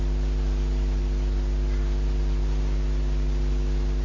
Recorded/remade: recorded